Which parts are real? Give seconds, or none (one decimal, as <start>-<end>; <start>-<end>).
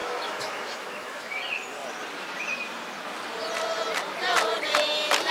1.4-5.3